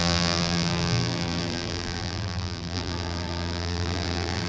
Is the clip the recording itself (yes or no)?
no